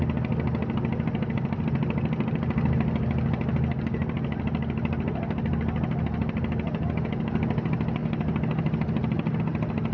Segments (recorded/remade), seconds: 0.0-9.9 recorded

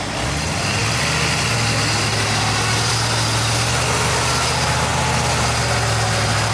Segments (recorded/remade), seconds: 0.0-6.5 recorded